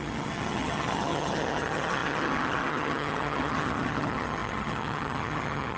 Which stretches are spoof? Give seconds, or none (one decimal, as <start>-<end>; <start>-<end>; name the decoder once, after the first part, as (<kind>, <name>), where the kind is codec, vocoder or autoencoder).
0.0-5.8 (vocoder, HiFi-GAN)